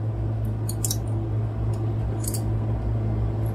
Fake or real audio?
real